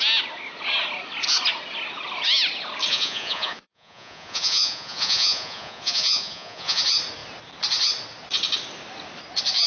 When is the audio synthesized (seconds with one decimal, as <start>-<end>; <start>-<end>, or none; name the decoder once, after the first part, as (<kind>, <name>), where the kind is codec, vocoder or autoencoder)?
2.9-6.8 (vocoder, Vocos)